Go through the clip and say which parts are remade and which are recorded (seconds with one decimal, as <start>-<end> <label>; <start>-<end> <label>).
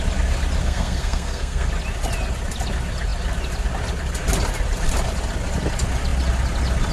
0.0-0.6 recorded; 0.6-1.7 remade; 1.7-6.9 recorded